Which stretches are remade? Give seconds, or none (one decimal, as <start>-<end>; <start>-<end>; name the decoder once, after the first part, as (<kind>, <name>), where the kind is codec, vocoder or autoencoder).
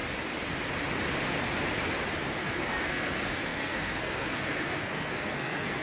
2.4-5.8 (codec, SNAC)